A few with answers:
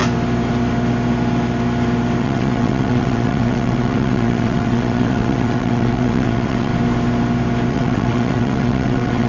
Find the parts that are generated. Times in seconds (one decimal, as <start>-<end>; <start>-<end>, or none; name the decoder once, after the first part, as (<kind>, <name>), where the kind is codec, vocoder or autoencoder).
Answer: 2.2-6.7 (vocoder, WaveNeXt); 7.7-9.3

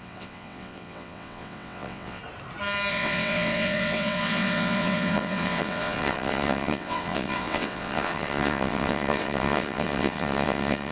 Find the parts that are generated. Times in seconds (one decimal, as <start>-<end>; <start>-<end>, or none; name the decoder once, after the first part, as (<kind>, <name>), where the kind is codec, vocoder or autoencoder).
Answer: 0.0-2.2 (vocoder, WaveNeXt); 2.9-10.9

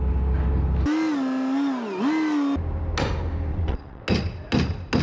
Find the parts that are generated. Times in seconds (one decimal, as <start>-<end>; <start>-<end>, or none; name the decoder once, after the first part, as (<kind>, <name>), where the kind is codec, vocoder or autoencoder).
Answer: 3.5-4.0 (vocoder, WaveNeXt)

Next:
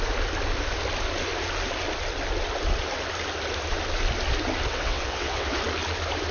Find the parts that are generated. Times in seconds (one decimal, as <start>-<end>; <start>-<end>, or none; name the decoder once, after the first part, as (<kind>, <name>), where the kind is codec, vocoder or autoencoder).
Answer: 4.7-5.6 (vocoder, WaveNeXt)

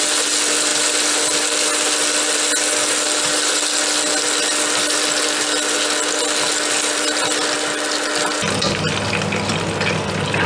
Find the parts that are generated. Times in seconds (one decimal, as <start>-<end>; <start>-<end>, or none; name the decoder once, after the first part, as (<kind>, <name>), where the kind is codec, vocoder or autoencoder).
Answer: none

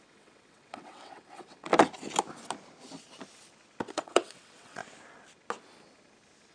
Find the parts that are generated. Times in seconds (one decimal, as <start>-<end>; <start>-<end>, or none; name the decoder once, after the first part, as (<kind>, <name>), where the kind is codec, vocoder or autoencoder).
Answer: 0.0-1.7 (vocoder, WaveNeXt); 3.9-4.8